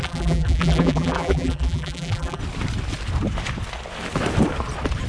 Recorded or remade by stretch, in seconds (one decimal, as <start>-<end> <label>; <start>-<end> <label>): 0.0-2.4 remade; 2.4-5.1 recorded